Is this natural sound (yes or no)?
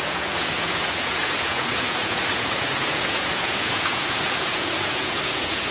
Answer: no